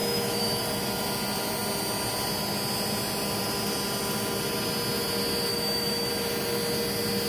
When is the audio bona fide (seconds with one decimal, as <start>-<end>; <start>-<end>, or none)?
0.6-5.5; 6.1-7.3